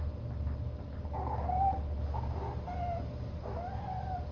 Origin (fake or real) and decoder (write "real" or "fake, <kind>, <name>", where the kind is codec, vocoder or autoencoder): real